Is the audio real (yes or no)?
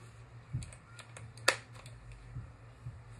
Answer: yes